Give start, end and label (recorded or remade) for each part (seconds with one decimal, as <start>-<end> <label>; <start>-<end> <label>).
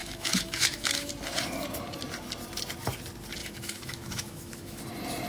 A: 0.0-1.1 remade; 1.1-3.4 recorded; 3.4-4.8 remade; 4.8-5.3 recorded